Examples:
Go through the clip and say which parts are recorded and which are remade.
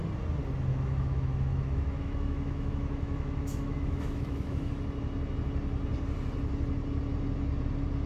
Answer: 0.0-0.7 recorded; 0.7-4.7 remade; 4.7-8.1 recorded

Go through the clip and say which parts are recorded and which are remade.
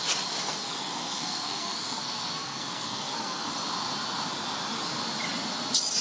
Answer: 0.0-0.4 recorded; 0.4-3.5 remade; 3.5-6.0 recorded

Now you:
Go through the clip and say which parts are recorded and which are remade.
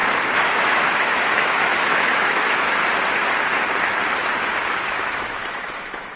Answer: 0.0-0.5 recorded; 0.5-2.8 remade; 2.8-4.4 recorded; 4.4-6.2 remade